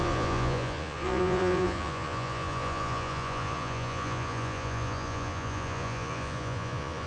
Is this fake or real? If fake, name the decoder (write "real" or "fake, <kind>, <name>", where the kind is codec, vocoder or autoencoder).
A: fake, vocoder, Vocos